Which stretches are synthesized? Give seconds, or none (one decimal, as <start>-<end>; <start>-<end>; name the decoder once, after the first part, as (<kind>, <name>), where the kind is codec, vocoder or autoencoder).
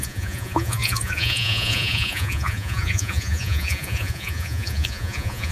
0.0-5.5 (vocoder, Vocos)